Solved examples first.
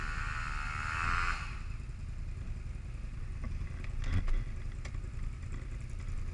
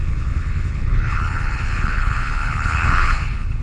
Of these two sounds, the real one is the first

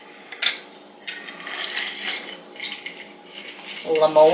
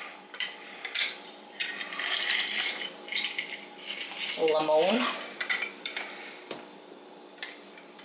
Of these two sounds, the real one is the first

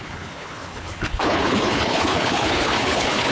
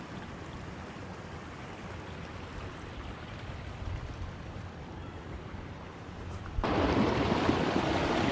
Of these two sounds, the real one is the second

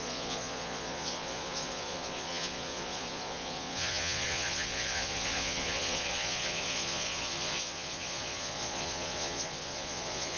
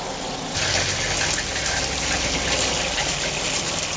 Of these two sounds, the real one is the second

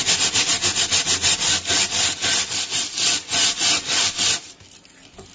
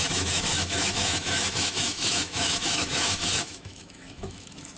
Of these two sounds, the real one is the first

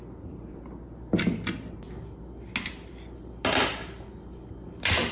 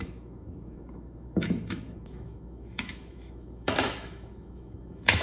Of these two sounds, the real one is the first